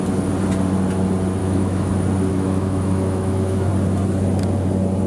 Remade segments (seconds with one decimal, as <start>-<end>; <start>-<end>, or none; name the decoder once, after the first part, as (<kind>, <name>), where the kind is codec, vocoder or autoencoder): 1.4-1.9 (autoencoder, DAC-VAE); 2.3-3.7